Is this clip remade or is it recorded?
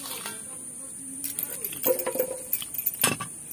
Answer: recorded